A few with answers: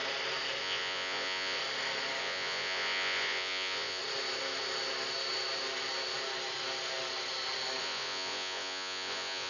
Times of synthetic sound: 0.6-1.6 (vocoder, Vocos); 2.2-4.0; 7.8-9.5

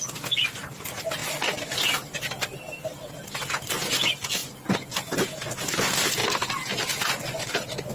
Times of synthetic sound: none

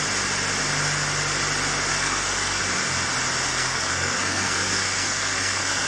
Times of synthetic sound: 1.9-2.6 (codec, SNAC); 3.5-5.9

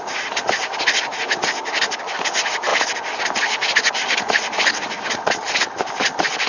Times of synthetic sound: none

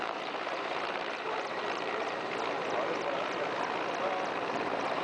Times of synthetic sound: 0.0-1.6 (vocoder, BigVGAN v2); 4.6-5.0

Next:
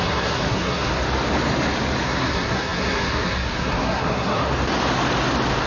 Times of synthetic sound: 0.0-0.9 (codec, SNAC); 2.0-4.5

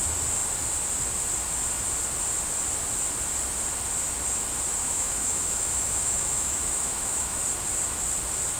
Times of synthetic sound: 4.8-7.4 (autoencoder, DAC-VAE)

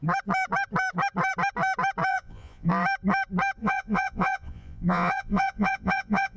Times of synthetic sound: 2.1-2.7 (vocoder, Vocos); 3.6-6.4